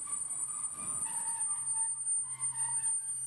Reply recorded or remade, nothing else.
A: recorded